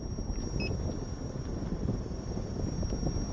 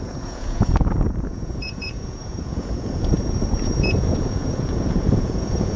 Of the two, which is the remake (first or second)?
second